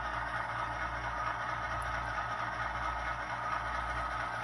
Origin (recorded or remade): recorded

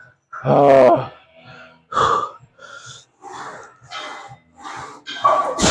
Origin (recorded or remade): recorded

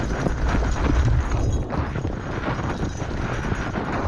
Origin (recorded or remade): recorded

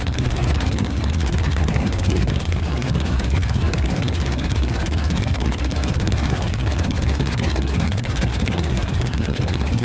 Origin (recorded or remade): remade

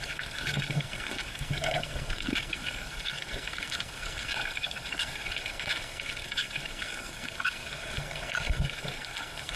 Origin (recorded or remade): remade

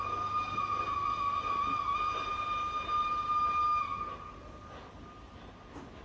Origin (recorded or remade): recorded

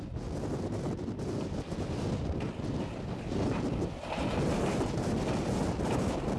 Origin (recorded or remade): recorded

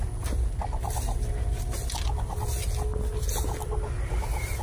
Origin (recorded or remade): recorded